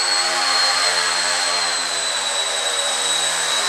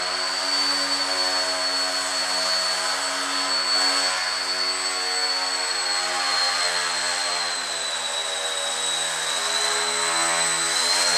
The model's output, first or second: first